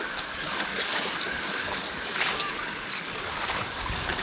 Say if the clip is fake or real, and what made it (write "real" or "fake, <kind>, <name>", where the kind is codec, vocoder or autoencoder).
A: fake, codec, DAC